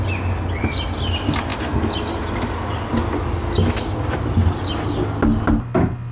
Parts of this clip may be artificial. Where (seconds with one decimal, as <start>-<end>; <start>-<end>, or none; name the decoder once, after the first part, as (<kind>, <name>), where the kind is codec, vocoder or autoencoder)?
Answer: none